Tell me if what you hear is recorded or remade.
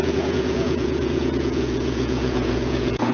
remade